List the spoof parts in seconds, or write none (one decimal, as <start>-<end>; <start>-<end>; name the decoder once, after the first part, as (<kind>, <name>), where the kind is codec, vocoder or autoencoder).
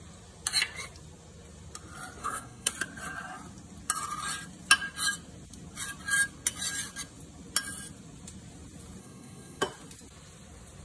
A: 2.2-2.7 (codec, SNAC); 9.0-9.6